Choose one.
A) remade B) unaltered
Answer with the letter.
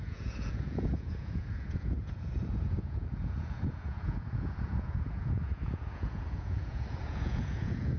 A